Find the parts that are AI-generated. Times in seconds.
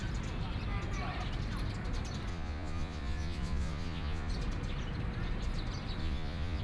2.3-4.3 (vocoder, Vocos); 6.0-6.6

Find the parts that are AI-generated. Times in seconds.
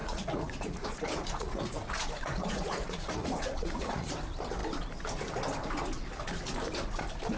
0.0-4.1 (vocoder, Vocos)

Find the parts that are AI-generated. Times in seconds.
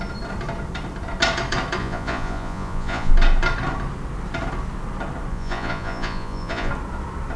1.8-3.1 (vocoder, Vocos); 5.3-6.7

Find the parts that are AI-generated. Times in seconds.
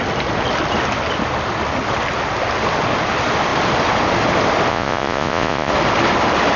4.7-5.7 (vocoder, Vocos)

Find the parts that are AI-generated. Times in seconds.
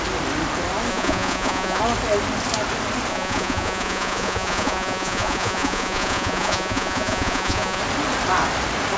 0.9-1.8 (vocoder, Vocos); 3.1-7.8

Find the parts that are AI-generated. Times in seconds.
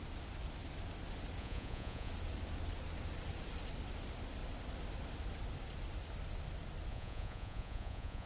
1.4-2.1 (vocoder, Vocos); 6.9-8.3